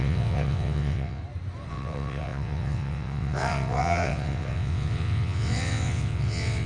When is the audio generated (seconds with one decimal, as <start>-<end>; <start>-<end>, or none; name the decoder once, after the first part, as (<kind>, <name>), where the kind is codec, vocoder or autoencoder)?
0.0-1.2 (vocoder, WaveNeXt); 1.7-6.7